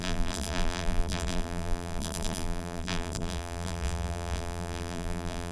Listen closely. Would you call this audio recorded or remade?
remade